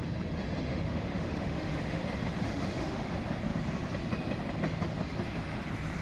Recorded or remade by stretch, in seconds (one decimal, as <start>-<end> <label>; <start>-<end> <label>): 0.0-0.7 recorded; 0.7-2.0 remade; 2.0-2.4 recorded; 2.4-3.1 remade; 3.1-6.0 recorded